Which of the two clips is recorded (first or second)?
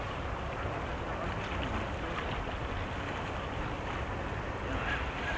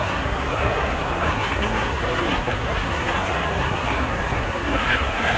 first